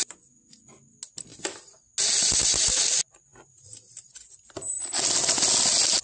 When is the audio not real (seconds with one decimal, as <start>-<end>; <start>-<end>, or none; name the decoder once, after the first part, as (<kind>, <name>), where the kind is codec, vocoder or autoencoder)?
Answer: 3.3-5.1 (vocoder, BigVGAN v2)